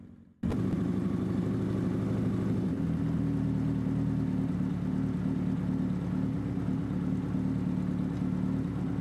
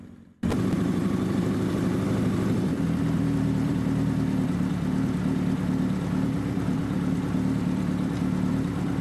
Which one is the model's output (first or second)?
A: second